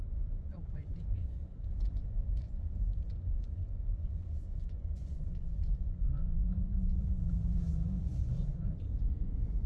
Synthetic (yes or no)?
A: yes